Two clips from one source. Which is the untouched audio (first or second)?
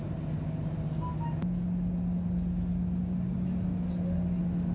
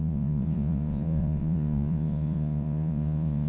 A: first